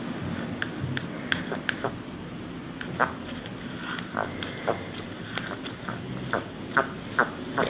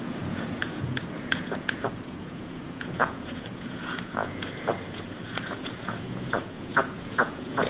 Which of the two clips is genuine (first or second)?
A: first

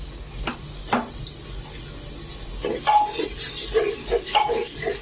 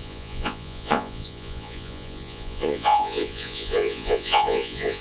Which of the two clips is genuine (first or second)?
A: first